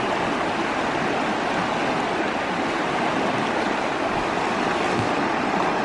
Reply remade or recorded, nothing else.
recorded